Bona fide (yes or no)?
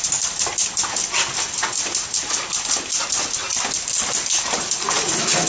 yes